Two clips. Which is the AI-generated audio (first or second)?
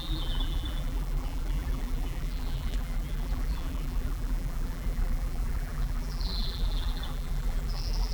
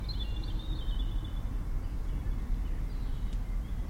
first